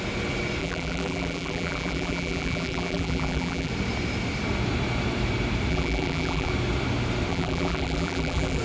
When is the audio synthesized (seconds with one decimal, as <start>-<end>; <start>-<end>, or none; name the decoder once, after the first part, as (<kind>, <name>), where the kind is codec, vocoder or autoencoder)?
0.6-3.7 (vocoder, BigVGAN v2); 5.7-6.5; 7.3-8.6